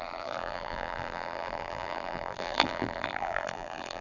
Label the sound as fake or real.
fake